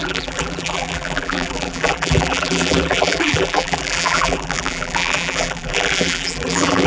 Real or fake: fake